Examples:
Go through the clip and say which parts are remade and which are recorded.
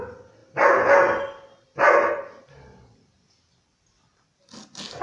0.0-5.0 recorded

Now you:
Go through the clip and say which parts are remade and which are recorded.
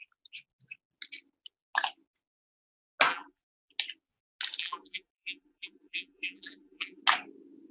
0.0-3.1 recorded; 3.1-3.7 remade; 3.7-4.6 recorded; 4.6-7.0 remade; 7.0-7.7 recorded